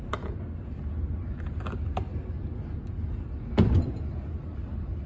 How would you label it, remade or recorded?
recorded